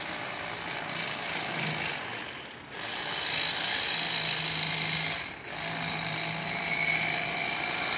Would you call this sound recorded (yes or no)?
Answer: yes